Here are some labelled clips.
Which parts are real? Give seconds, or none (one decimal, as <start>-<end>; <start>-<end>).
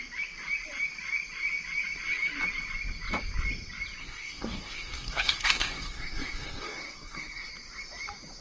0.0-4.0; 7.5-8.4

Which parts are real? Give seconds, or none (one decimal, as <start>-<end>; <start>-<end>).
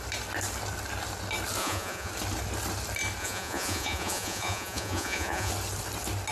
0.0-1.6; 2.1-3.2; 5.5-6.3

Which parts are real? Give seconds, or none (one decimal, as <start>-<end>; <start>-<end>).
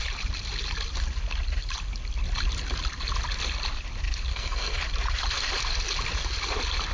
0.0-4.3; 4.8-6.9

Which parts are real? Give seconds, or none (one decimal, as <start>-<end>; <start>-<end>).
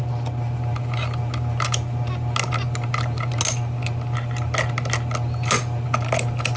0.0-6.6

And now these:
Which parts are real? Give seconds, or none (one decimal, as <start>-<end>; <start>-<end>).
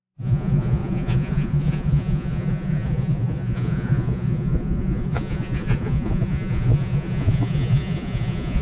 none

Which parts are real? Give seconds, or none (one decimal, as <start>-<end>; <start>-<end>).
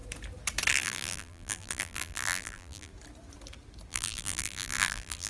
0.0-0.7; 2.9-3.9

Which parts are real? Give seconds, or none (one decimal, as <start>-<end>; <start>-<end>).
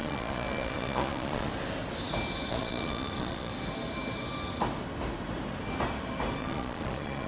1.5-2.5; 3.5-6.4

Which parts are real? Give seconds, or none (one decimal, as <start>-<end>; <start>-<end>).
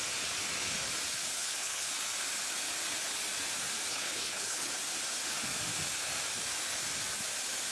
0.0-1.4; 1.9-3.9; 4.7-7.7